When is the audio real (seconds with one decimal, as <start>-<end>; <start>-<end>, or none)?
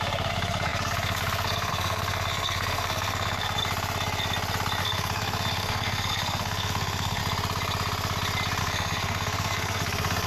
3.6-4.8; 7.2-8.6